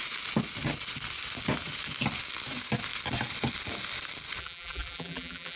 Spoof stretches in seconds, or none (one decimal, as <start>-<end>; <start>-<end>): 4.4-5.6